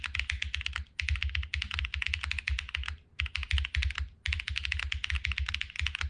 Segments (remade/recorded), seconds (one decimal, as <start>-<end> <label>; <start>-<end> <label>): 0.0-6.1 recorded